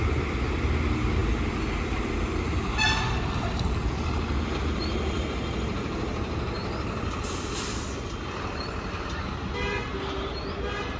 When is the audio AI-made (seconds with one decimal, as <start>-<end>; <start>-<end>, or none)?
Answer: none